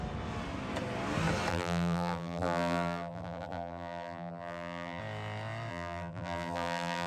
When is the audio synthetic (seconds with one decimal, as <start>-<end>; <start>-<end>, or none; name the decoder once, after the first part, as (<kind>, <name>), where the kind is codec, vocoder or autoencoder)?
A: 1.5-5.0 (vocoder, BigVGAN v2); 5.7-7.1